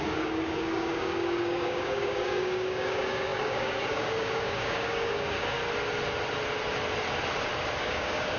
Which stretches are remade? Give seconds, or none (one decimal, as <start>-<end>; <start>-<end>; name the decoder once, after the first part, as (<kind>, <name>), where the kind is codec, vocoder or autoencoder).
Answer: 0.0-5.6 (codec, DAC); 7.8-8.4